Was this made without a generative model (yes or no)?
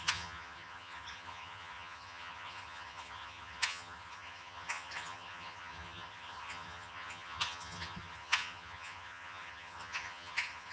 no